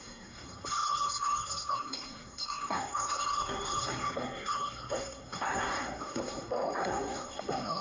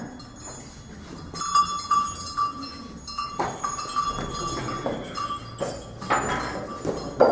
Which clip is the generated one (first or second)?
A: first